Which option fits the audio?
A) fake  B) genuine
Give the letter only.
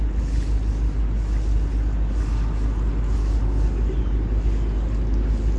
B